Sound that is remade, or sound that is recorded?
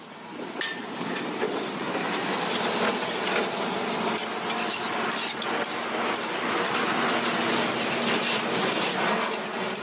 recorded